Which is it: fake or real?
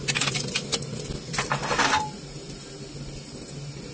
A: real